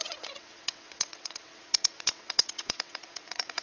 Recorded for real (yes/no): no